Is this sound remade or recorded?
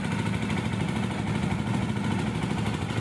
recorded